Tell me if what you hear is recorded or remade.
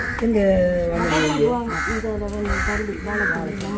recorded